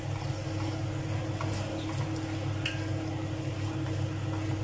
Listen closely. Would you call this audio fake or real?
real